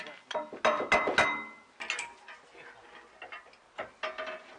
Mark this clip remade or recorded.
recorded